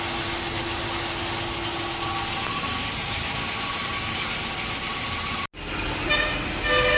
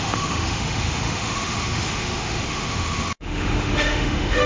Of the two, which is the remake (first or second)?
second